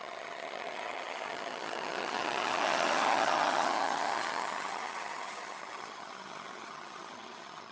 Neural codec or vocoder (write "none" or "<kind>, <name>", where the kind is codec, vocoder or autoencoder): vocoder, HiFi-GAN